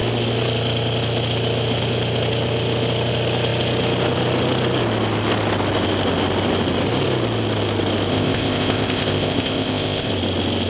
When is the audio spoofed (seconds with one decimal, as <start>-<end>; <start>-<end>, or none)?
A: 8.1-10.1